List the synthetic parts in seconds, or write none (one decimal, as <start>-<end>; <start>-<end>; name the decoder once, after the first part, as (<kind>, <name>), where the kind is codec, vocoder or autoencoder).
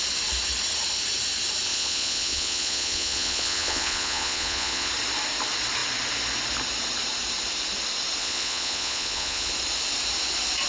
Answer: 1.7-4.9 (vocoder, Vocos); 8.2-9.5